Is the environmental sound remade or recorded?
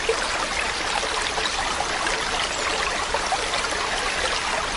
recorded